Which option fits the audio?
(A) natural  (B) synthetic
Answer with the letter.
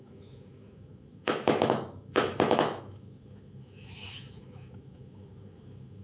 B